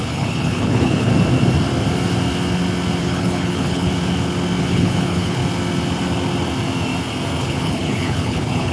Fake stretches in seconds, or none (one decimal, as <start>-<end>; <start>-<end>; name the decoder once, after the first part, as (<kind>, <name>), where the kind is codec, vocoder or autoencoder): 0.0-1.1 (codec, HILCodec); 3.0-3.9; 4.6-5.4; 7.4-8.7

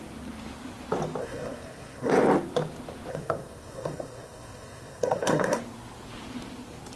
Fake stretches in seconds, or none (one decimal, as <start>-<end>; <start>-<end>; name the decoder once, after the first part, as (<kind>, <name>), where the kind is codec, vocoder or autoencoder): 1.2-2.1 (codec, SNAC); 3.1-5.6